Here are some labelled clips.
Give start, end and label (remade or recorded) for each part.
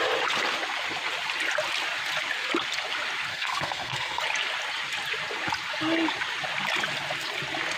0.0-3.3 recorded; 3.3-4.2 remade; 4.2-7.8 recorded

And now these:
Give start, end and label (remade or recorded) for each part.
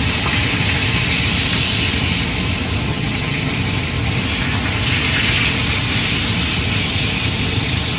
0.0-2.9 recorded; 2.9-3.5 remade; 3.5-8.0 recorded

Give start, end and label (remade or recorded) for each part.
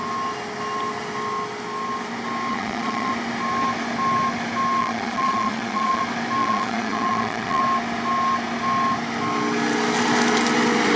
0.0-2.5 recorded; 2.5-3.1 remade; 3.1-4.8 recorded; 4.8-6.0 remade; 6.0-6.4 recorded; 6.4-7.6 remade; 7.6-11.0 recorded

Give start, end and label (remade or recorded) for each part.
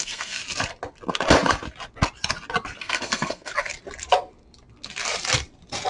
0.0-0.4 remade; 0.4-2.8 recorded; 2.8-3.5 remade; 3.5-5.9 recorded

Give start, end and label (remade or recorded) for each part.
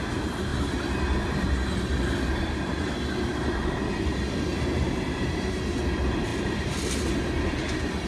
0.0-8.1 recorded